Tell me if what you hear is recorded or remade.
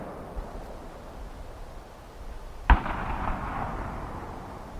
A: recorded